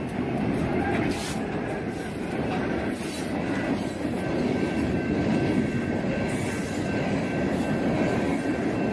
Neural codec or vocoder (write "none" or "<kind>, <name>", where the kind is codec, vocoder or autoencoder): none